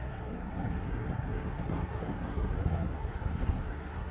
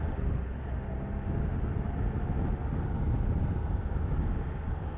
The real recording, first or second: second